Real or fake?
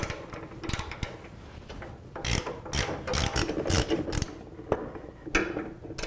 real